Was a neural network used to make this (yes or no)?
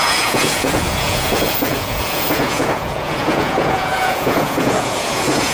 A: yes